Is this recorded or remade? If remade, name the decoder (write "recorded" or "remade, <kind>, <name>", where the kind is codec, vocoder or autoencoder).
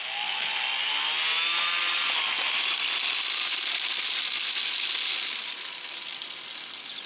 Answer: recorded